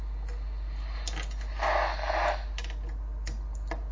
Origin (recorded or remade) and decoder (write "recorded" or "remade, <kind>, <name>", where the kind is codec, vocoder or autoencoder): recorded